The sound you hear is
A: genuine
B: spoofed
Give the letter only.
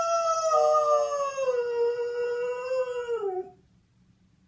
A